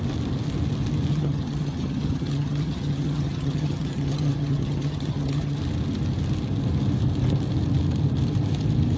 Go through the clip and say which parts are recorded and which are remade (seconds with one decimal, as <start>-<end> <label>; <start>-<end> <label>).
0.0-1.1 recorded; 1.1-5.6 remade; 5.6-9.0 recorded